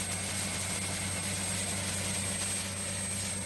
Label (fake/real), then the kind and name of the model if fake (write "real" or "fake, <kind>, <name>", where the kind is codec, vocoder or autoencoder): real